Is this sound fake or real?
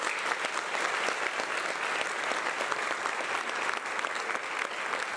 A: real